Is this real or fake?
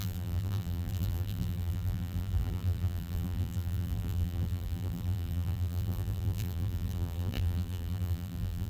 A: fake